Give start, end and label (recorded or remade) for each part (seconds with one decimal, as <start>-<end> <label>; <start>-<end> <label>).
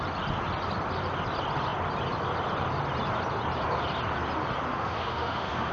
0.0-4.7 recorded; 4.7-5.7 remade